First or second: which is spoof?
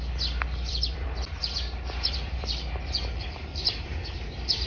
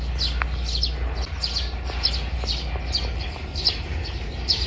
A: first